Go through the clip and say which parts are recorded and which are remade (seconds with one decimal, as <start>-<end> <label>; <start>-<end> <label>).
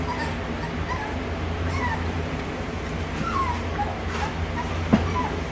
0.0-1.0 recorded; 1.0-4.3 remade; 4.3-4.9 recorded; 4.9-5.5 remade